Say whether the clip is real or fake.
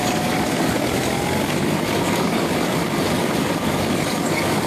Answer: fake